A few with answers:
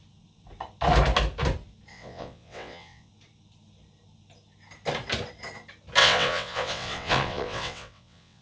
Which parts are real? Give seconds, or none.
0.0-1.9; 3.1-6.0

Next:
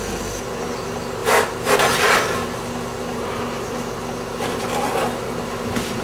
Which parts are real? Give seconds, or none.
0.0-6.0